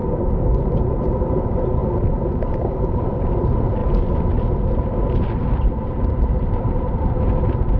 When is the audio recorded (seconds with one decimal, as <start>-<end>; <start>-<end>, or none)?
0.0-0.6; 1.8-2.5; 3.8-4.7